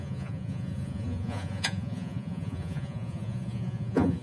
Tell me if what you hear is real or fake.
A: fake